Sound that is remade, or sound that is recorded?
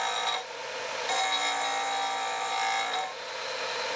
recorded